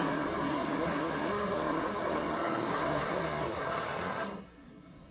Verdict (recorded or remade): remade